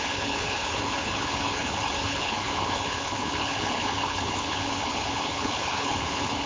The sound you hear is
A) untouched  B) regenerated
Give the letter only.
B